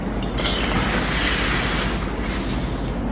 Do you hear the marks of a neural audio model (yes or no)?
no